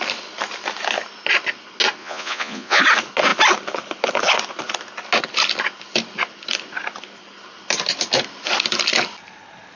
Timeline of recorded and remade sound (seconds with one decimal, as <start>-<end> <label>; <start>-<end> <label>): 0.0-2.0 recorded; 2.0-2.8 remade; 2.8-9.8 recorded